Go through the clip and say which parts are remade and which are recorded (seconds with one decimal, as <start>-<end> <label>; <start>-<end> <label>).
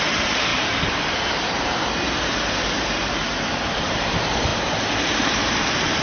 0.0-6.0 remade